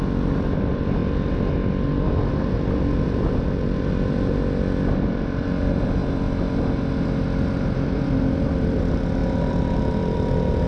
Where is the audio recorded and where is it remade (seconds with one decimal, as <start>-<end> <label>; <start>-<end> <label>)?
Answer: 0.0-1.0 remade; 1.0-4.9 recorded; 4.9-6.0 remade; 6.0-7.2 recorded; 7.2-10.7 remade